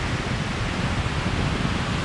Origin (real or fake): real